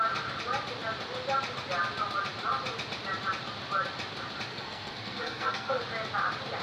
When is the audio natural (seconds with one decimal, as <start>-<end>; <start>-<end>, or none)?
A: 0.0-4.5; 5.8-6.6